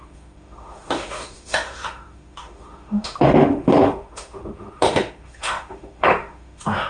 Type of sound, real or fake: fake